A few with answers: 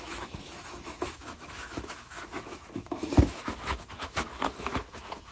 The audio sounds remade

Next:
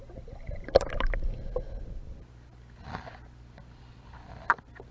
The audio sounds recorded